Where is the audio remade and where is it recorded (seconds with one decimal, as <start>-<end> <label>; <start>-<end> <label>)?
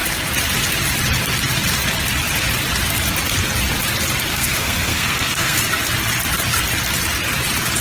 0.0-4.3 recorded; 4.3-5.6 remade; 5.6-7.8 recorded